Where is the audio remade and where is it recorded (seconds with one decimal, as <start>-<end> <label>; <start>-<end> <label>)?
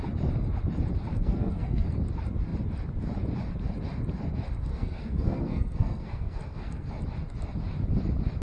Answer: 0.0-1.1 recorded; 1.1-2.0 remade; 2.0-4.7 recorded; 4.7-6.9 remade; 6.9-8.4 recorded